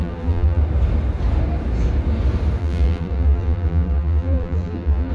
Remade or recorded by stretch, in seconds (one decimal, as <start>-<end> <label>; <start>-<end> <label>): 0.0-0.6 remade; 0.6-2.6 recorded; 2.6-5.1 remade